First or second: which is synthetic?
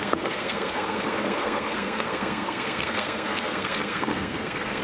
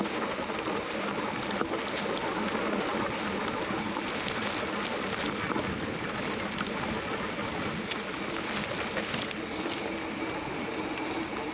first